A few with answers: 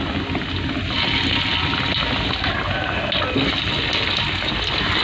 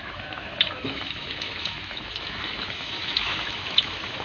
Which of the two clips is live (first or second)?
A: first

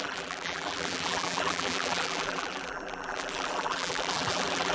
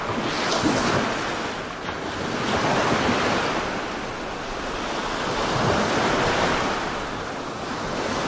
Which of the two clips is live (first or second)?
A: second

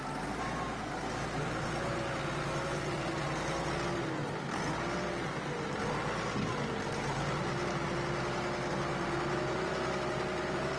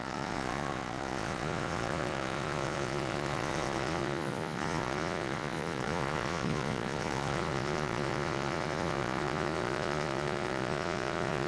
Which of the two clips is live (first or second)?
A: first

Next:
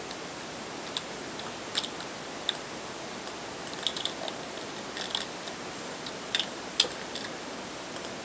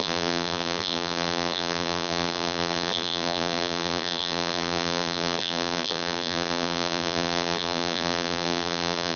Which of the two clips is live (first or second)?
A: first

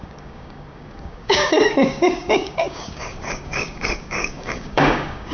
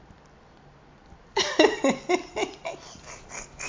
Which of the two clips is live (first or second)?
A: second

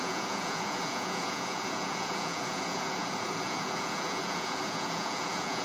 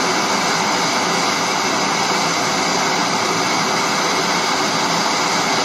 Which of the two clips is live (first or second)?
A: second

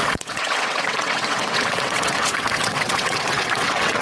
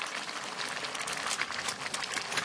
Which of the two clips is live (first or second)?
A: second